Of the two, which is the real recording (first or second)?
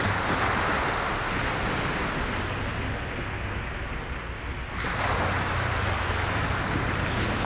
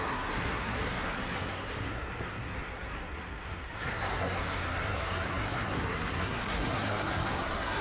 first